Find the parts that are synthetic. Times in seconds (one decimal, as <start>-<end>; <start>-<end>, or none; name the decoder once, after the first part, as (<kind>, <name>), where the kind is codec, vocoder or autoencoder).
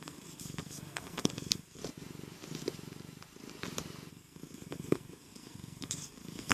0.0-1.8 (codec, SNAC); 4.1-6.5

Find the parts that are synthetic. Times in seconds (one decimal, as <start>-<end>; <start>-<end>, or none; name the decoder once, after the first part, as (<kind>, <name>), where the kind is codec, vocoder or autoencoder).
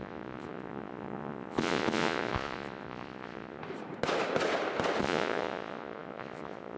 0.0-3.6 (vocoder, Vocos); 5.0-6.8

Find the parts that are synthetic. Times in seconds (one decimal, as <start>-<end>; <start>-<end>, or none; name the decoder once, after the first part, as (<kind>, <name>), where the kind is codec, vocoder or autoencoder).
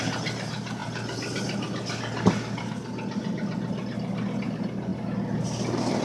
0.0-0.8 (vocoder, BigVGAN v2); 4.4-4.9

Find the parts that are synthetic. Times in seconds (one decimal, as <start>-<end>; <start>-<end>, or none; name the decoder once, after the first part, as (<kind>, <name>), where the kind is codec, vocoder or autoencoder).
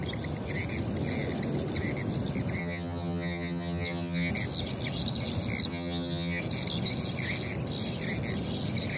2.6-4.3 (vocoder, HiFi-GAN); 5.7-6.4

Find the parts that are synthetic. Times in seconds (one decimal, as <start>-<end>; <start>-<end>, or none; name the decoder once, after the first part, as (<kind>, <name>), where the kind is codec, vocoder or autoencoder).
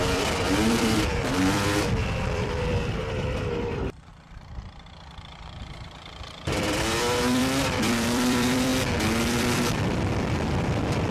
0.0-8.7 (vocoder, BigVGAN v2); 9.4-11.1